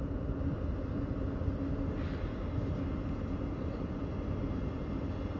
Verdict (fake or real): real